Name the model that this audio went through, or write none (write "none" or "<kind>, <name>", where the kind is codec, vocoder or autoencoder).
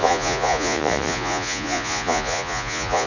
vocoder, Vocos